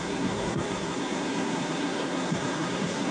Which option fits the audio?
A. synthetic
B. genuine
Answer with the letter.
A